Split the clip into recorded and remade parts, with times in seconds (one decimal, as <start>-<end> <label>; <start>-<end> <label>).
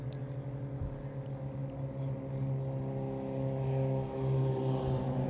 0.0-5.3 recorded